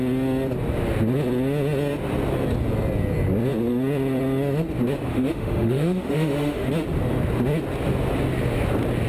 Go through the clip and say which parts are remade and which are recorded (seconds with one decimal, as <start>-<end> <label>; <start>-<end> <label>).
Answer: 0.0-5.1 recorded; 5.1-6.7 remade; 6.7-9.1 recorded